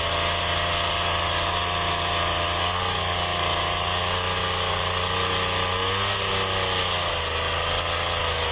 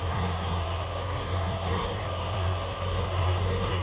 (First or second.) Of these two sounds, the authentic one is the first